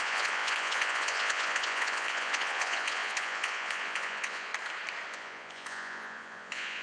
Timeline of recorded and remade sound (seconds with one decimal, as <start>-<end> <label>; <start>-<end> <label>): 0.0-4.5 remade; 4.5-5.1 recorded; 5.1-6.8 remade